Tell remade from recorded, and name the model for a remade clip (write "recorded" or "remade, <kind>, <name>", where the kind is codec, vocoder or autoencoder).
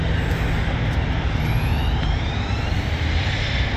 recorded